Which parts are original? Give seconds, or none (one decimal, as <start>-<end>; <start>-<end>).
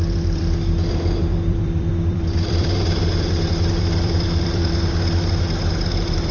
4.6-5.7